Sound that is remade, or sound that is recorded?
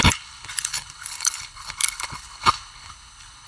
remade